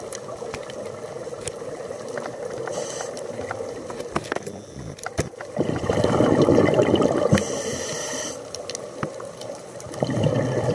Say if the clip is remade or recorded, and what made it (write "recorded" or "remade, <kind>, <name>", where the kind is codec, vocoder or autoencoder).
recorded